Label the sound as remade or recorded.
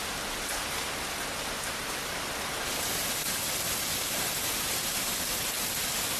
recorded